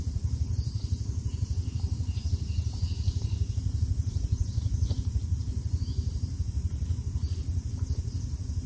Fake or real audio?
fake